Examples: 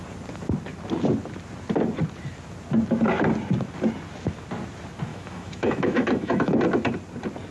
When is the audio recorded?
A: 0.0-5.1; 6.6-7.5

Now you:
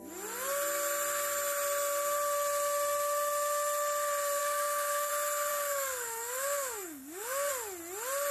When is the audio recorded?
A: 0.0-4.4; 5.1-5.5; 7.5-8.3